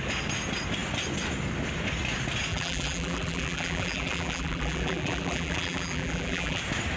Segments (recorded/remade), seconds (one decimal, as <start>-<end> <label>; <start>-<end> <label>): 0.0-2.5 recorded; 2.5-6.6 remade; 6.6-7.0 recorded